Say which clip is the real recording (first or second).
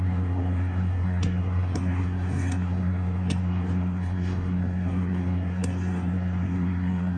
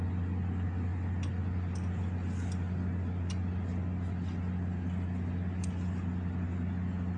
second